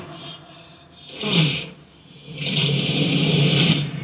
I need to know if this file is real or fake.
fake